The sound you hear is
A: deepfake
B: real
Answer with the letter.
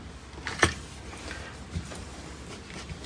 B